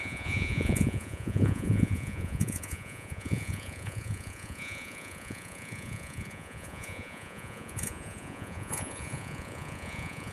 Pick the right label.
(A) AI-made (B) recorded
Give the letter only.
A